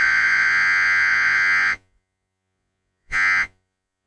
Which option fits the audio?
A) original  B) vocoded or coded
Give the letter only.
B